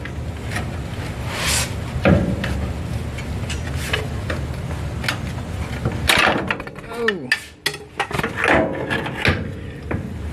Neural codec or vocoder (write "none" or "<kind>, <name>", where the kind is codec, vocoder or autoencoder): none